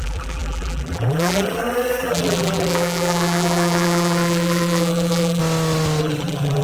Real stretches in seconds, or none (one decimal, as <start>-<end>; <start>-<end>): 5.4-6.0